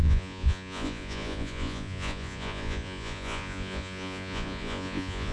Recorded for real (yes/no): no